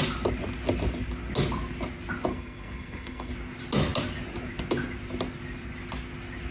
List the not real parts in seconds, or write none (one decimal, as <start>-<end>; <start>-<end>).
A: 2.3-3.3